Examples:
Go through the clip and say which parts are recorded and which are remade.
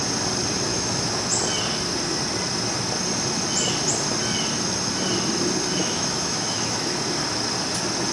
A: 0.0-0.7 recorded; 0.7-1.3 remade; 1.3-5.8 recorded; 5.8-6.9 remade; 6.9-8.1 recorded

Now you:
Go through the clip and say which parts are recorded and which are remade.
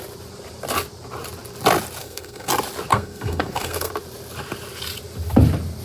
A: 0.0-2.0 recorded; 2.0-2.5 remade; 2.5-2.9 recorded; 2.9-3.9 remade; 3.9-5.8 recorded